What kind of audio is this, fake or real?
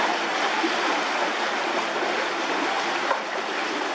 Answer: real